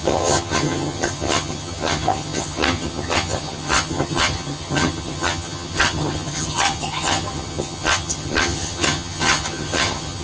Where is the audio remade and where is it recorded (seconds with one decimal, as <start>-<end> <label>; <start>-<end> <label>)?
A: 0.0-10.2 remade